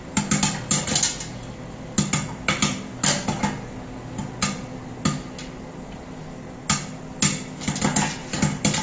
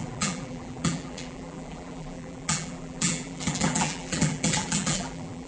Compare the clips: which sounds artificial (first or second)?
second